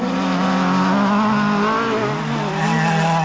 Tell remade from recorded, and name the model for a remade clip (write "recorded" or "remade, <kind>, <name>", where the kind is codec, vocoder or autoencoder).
recorded